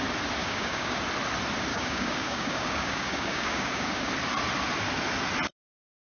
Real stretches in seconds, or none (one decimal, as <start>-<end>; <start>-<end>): 0.0-0.4; 1.0-1.7; 4.1-6.1